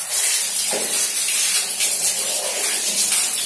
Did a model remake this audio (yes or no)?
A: yes